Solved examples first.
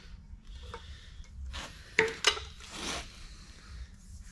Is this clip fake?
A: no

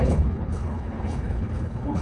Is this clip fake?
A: yes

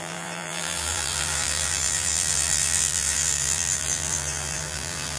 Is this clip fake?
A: yes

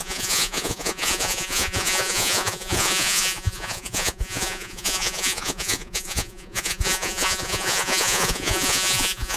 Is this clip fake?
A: yes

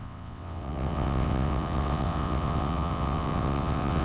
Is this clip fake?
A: yes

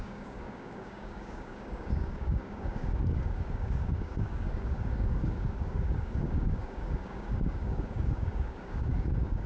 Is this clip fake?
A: yes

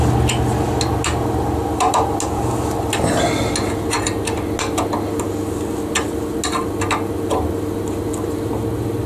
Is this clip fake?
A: no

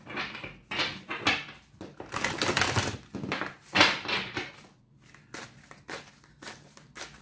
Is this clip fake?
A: no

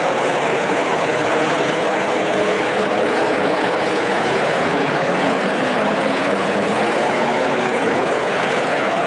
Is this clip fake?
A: yes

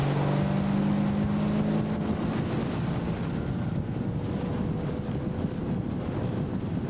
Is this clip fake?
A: no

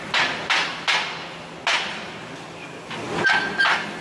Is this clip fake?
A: no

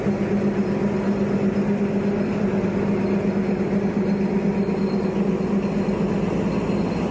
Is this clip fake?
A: no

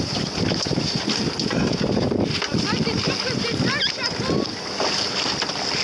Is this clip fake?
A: no